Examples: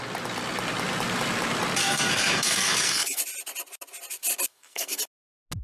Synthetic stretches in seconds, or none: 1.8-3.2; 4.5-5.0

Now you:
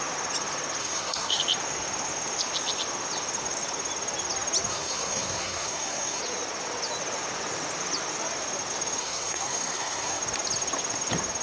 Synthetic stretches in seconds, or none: 0.8-1.4; 4.7-6.2; 9.0-10.2

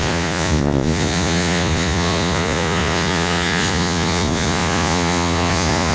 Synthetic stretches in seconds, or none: 0.0-5.9

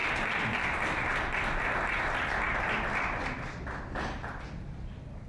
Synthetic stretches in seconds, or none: none

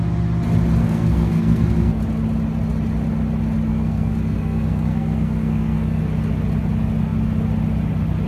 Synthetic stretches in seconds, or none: 0.8-2.0; 3.7-6.0

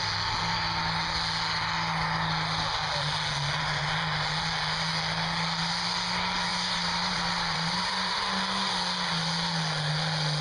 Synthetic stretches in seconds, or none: 6.5-8.2